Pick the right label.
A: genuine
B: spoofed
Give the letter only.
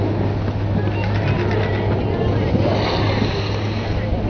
A